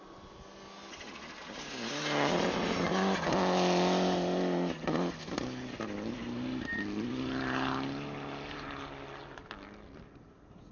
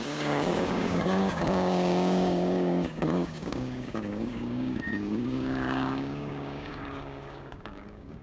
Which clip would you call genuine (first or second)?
first